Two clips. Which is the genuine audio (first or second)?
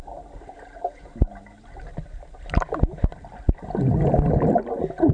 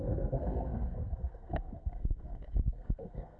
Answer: first